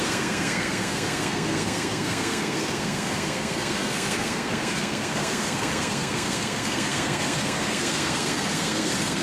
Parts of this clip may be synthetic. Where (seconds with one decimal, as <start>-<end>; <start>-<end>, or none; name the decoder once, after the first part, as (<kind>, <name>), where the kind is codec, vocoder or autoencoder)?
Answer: 0.0-9.2 (codec, SNAC)